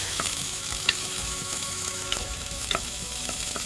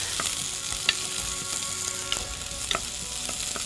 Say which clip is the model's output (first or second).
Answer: first